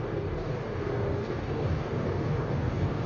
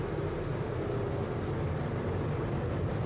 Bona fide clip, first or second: second